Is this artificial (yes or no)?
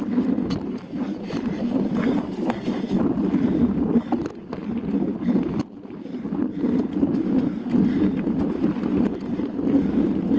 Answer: no